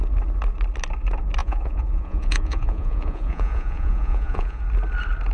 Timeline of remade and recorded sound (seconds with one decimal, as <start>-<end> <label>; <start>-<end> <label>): 0.0-1.4 recorded; 1.4-4.6 remade; 4.6-5.3 recorded